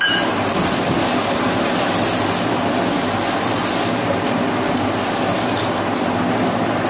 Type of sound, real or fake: real